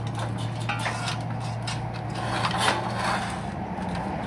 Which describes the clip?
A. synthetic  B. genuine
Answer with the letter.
B